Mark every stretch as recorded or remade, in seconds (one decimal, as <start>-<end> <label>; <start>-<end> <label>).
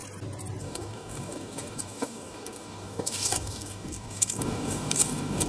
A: 0.0-0.6 recorded; 0.6-5.5 remade